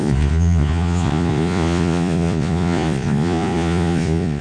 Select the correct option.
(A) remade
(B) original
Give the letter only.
A